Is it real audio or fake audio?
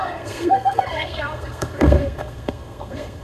fake